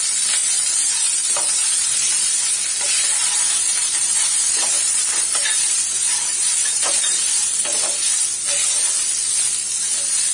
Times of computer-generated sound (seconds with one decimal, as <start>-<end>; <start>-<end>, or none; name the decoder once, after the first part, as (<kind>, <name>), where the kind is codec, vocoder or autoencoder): 0.4-2.2 (vocoder, BigVGAN v2); 3.2-8.1